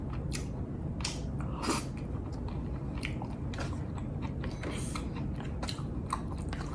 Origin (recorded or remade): recorded